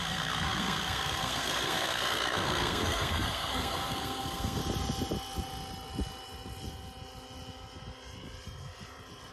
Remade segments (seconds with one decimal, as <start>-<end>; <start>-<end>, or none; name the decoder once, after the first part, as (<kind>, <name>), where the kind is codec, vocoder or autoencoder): 0.0-4.6 (codec, SNAC)

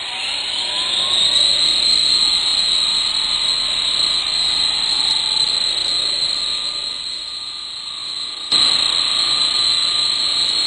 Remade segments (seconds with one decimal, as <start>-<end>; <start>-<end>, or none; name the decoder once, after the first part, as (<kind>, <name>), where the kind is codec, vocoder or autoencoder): none